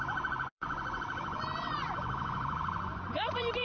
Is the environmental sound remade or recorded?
remade